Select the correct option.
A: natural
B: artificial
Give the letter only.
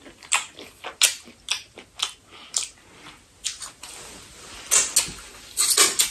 A